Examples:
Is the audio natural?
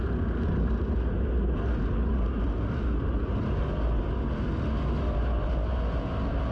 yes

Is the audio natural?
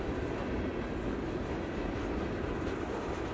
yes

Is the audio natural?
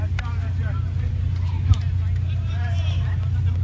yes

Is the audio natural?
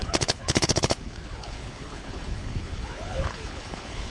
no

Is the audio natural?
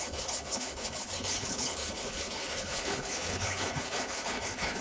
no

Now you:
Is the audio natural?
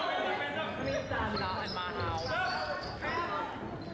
yes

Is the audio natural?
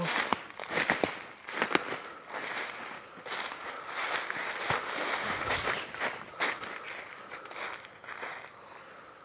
yes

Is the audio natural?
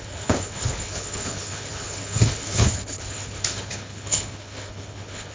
no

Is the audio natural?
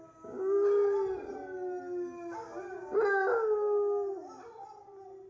yes